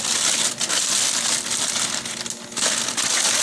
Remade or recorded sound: recorded